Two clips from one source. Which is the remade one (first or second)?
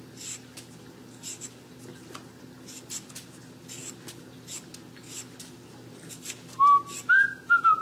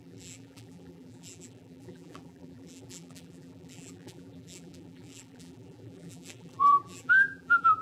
second